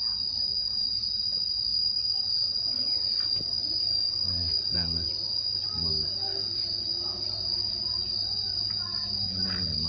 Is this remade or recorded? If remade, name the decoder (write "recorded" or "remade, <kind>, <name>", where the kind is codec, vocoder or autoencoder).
recorded